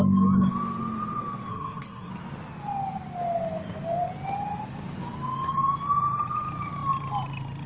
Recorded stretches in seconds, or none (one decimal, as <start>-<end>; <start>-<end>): 0.0-1.5; 2.1-7.7